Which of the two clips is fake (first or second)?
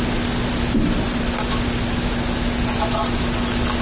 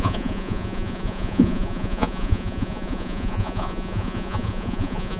second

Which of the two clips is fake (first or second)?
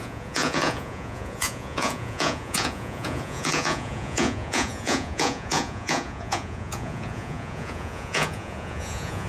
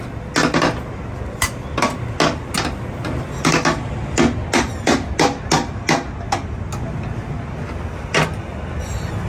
first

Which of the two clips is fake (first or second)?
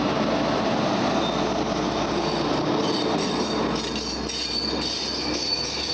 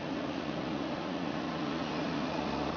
second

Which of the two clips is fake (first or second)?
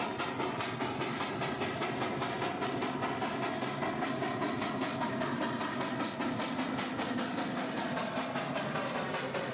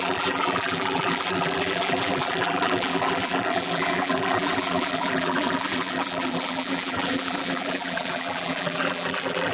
second